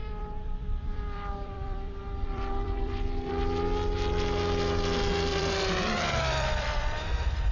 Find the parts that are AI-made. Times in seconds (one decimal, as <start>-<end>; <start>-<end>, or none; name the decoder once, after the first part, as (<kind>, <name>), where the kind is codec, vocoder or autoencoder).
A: 0.0-3.3 (vocoder, BigVGAN v2); 5.3-7.1